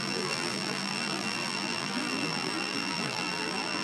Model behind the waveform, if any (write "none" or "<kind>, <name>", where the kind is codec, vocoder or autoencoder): vocoder, BigVGAN v2